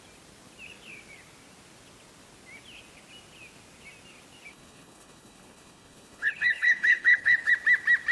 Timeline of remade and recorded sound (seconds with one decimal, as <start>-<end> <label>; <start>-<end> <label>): 0.0-4.5 recorded; 4.5-7.5 remade; 7.5-8.1 recorded